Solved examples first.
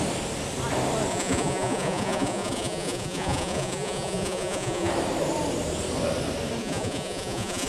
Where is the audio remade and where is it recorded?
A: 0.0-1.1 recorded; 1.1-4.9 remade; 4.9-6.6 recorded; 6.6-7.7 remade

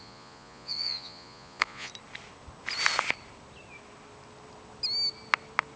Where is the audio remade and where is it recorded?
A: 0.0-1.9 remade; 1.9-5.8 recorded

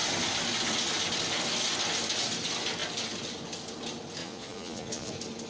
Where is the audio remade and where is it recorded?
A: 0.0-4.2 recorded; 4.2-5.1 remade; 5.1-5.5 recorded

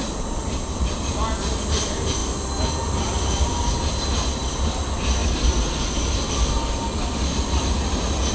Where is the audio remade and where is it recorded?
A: 0.0-8.3 recorded

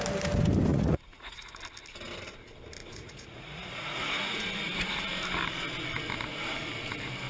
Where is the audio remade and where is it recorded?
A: 0.0-0.7 recorded; 0.7-1.5 remade; 1.5-2.8 recorded; 2.8-4.9 remade; 4.9-7.3 recorded

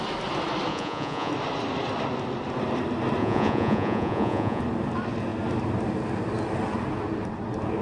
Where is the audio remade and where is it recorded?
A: 0.0-0.7 recorded; 0.7-1.3 remade; 1.3-3.2 recorded; 3.2-4.6 remade; 4.6-7.8 recorded